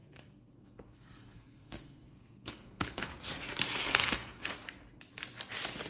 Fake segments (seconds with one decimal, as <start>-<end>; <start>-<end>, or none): 0.0-3.1; 3.9-4.5

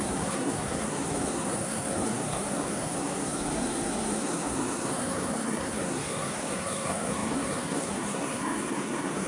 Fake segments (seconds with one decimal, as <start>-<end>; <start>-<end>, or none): 0.0-9.3

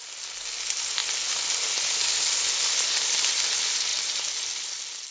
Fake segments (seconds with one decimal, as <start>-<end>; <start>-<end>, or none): none

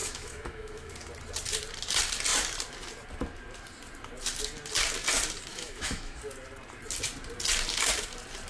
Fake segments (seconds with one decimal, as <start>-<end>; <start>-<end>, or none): 0.0-0.9; 5.5-6.2

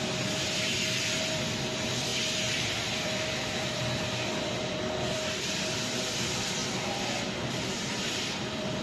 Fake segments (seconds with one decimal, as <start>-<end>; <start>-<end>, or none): 0.0-6.6; 7.4-8.8